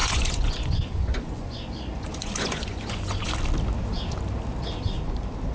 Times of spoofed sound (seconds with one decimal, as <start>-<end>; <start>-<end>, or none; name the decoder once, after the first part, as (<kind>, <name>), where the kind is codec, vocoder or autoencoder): 0.0-3.3 (vocoder, Vocos)